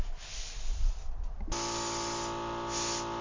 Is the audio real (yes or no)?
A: yes